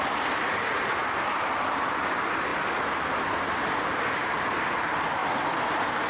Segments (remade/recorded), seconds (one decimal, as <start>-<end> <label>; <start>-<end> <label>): 0.0-2.5 remade; 2.5-3.9 recorded; 3.9-5.2 remade; 5.2-6.1 recorded